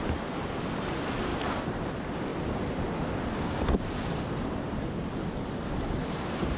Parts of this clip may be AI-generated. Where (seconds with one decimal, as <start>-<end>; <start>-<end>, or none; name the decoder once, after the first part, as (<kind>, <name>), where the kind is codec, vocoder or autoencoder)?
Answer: 1.3-1.9 (vocoder, BigVGAN v2); 2.3-4.8